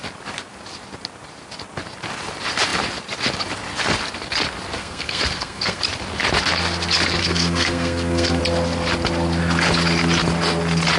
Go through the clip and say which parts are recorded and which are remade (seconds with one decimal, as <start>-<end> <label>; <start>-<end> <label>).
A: 0.0-4.8 recorded; 4.8-5.8 remade; 5.8-7.2 recorded; 7.2-8.4 remade; 8.4-11.0 recorded